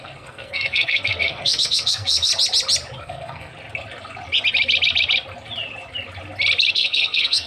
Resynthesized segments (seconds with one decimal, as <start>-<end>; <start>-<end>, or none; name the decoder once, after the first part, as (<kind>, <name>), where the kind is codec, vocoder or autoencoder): 0.0-2.3 (codec, SNAC); 3.0-3.5; 6.7-7.5